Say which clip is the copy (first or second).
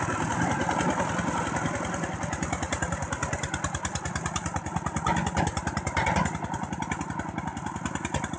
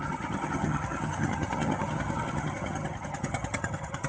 second